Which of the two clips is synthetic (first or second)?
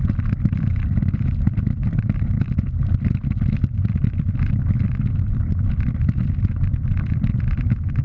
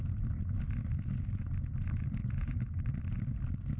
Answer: first